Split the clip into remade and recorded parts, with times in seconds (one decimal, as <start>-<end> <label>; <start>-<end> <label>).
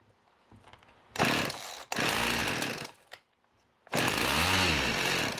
0.0-5.4 recorded